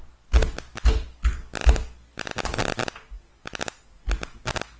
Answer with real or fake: real